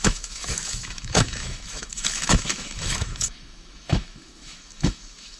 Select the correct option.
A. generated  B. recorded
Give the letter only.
A